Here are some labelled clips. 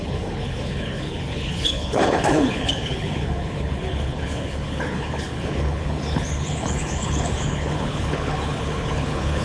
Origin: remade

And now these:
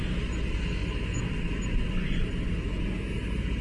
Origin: recorded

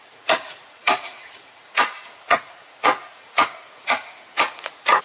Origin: remade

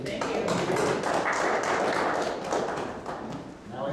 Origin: recorded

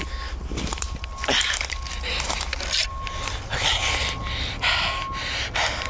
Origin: recorded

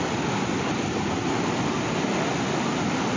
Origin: remade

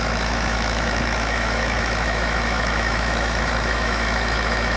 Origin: remade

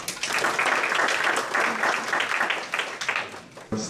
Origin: recorded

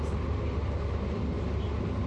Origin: recorded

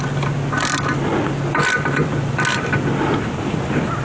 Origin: recorded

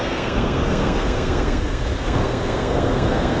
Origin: remade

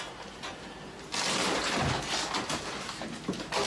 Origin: recorded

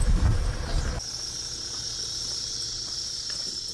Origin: recorded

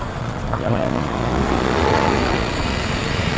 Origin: remade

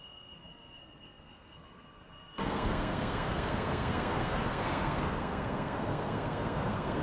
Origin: remade